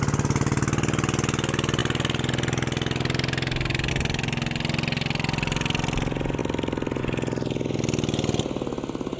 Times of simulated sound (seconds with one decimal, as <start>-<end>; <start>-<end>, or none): none